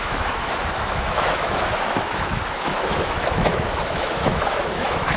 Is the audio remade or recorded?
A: remade